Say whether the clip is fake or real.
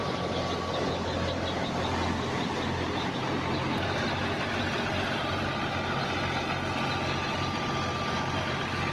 real